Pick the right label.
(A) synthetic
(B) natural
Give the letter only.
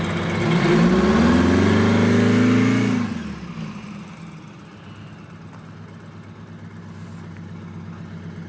B